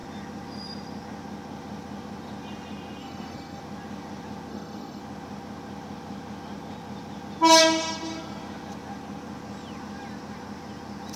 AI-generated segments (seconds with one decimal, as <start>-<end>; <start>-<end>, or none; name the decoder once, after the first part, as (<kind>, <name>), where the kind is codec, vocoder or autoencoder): 3.0-3.6 (codec, SNAC); 4.5-5.0